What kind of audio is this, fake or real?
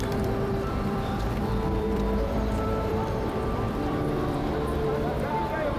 fake